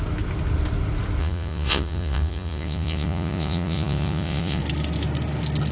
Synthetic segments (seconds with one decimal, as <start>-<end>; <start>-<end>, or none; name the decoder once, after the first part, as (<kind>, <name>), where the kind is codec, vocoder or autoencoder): 1.2-4.6 (vocoder, Vocos)